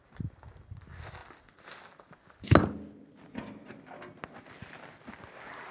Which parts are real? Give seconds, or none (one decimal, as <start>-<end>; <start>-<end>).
0.0-5.7